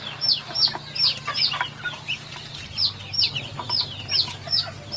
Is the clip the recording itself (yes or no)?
yes